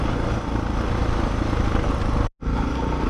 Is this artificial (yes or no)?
no